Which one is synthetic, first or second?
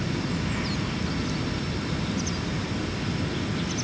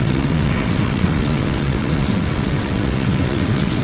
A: second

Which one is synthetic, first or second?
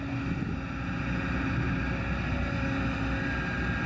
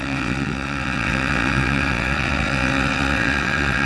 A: second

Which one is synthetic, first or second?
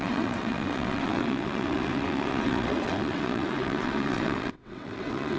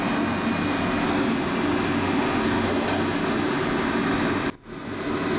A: first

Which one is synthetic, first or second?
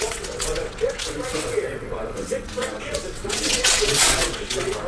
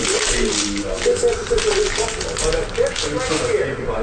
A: first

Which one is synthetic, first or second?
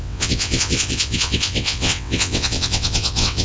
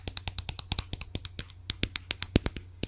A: first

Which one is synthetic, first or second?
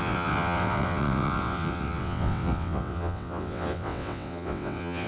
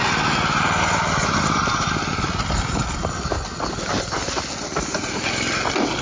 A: first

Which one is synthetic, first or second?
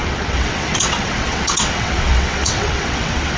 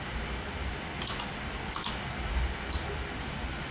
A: first